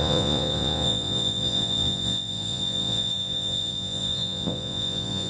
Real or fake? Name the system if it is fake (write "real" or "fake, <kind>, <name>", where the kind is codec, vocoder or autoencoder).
fake, vocoder, Vocos